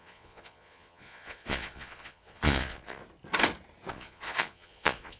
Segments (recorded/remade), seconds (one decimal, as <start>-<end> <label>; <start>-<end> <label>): 0.0-3.0 remade; 3.0-3.9 recorded; 3.9-5.2 remade